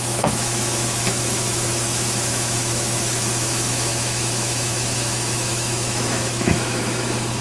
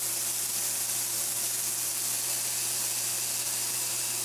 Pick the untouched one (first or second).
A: second